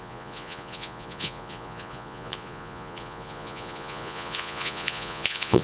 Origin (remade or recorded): remade